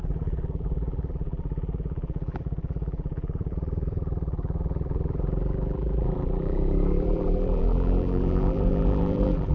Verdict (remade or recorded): remade